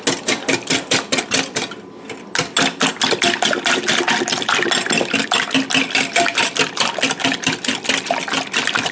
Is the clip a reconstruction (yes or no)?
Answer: no